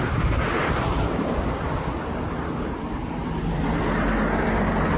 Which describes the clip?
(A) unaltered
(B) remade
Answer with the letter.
A